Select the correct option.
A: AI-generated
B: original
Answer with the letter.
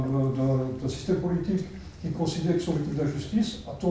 B